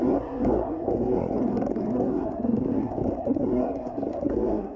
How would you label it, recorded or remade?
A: remade